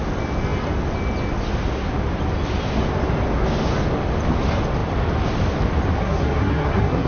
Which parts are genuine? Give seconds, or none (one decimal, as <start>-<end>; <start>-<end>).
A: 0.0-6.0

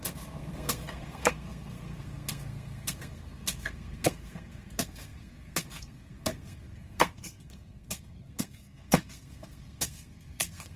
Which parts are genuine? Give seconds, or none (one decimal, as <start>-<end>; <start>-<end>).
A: none

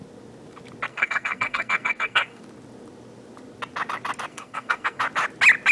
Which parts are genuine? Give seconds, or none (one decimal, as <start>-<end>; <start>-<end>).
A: 0.0-0.9; 2.4-4.3; 5.0-5.7

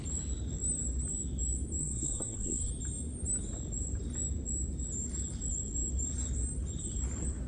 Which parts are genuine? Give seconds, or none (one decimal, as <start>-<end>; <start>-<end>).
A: 0.0-1.8; 2.7-7.5

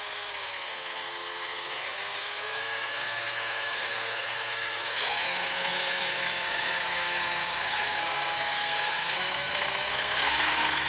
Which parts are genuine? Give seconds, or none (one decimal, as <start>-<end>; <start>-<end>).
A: none